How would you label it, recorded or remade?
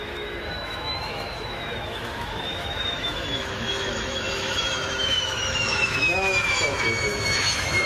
remade